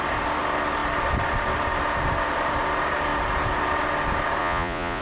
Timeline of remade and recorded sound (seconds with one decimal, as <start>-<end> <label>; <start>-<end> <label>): 0.0-4.4 recorded; 4.4-5.0 remade